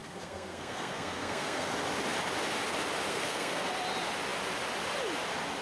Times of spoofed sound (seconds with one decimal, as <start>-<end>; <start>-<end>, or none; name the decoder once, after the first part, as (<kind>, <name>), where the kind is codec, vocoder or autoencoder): 0.0-1.7 (codec, SNAC); 3.1-3.7